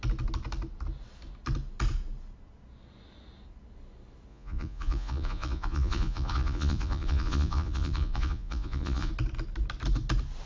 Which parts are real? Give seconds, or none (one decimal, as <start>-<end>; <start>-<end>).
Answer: 0.0-4.3; 9.1-10.5